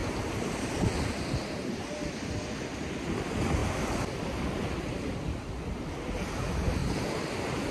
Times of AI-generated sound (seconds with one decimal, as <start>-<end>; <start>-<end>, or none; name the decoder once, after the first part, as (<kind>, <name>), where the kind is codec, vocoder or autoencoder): 6.8-7.3 (vocoder, BigVGAN v2)